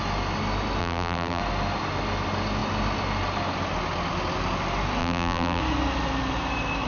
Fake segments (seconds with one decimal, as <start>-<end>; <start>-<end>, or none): 0.8-1.4; 5.0-5.6